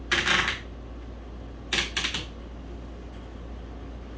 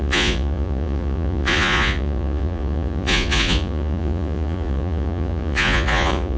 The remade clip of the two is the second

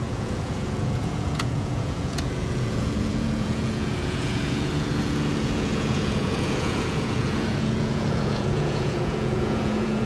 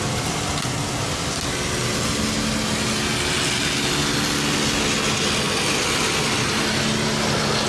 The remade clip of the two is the first